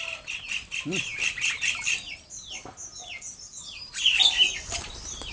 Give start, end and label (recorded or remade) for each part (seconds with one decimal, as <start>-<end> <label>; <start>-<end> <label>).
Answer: 0.0-1.1 recorded; 1.1-2.1 remade; 2.1-3.5 recorded; 3.5-5.3 remade